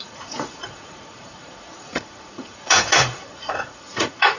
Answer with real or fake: fake